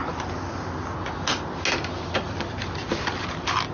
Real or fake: real